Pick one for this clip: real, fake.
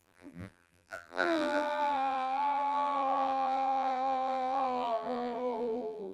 fake